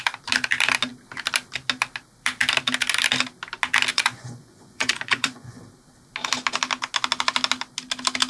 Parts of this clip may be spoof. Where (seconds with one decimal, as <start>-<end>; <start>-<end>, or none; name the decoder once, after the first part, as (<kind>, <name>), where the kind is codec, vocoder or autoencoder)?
3.9-5.6 (vocoder, Vocos)